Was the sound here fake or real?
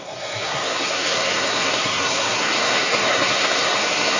fake